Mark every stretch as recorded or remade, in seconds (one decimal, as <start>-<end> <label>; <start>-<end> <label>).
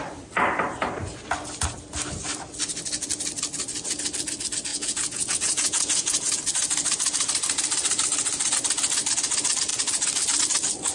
0.0-4.7 recorded; 4.7-6.4 remade; 6.4-10.9 recorded